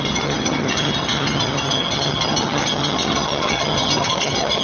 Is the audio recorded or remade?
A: remade